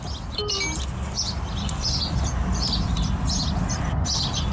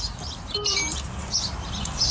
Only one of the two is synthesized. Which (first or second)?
second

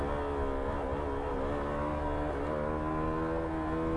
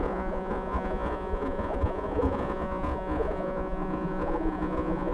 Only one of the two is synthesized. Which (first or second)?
second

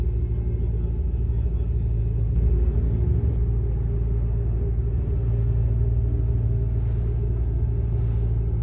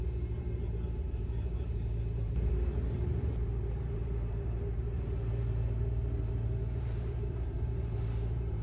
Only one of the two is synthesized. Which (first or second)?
second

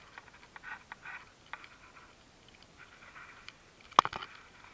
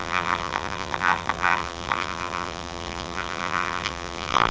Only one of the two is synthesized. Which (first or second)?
second